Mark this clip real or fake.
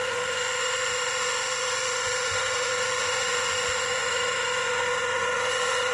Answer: fake